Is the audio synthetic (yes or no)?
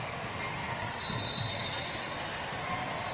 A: no